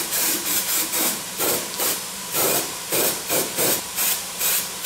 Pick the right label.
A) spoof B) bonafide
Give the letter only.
A